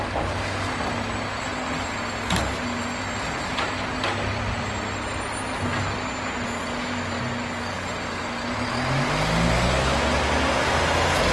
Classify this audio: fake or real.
real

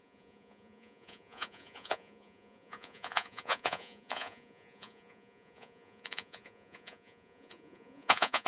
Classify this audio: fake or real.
fake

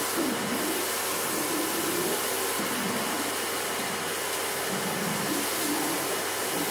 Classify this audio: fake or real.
real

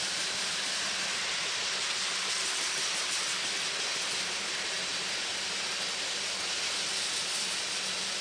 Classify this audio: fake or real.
real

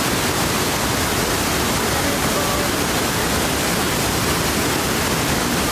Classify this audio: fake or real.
real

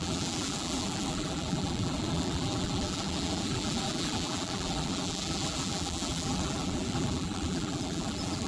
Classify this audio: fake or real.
fake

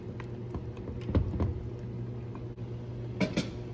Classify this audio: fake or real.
real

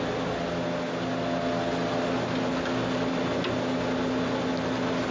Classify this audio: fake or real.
real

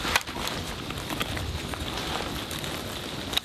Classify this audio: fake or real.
real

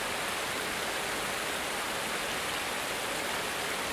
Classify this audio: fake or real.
real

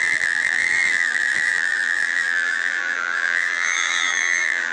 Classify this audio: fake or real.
fake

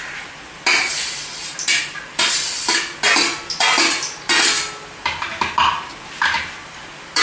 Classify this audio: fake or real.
real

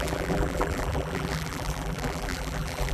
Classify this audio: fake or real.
fake